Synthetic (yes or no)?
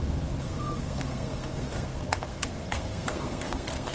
yes